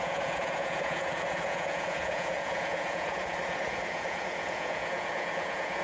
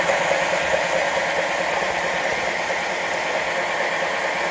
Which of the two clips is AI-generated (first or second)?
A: first